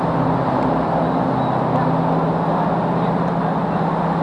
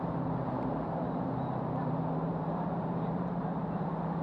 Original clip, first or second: first